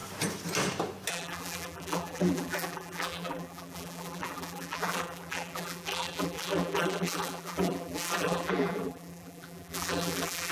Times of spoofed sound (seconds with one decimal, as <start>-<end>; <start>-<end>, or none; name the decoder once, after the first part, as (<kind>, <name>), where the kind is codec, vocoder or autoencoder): 1.1-10.5 (vocoder, BigVGAN v2)